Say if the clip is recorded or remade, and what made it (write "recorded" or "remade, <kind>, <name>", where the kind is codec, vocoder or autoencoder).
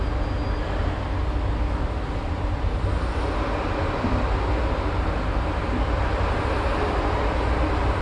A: recorded